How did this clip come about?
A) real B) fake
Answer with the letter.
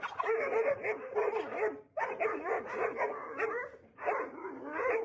A